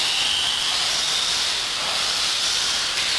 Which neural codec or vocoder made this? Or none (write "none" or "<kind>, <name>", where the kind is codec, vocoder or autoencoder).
none